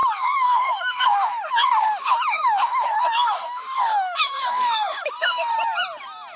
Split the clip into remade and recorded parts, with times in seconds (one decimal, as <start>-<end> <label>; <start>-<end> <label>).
0.0-5.5 remade; 5.5-6.4 recorded